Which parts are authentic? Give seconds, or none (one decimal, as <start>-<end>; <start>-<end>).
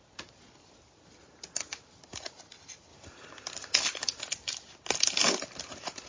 0.0-6.1